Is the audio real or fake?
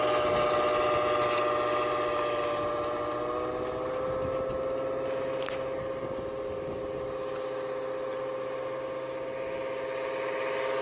real